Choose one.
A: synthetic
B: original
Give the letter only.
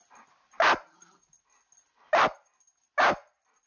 B